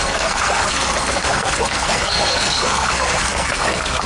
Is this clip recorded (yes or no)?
no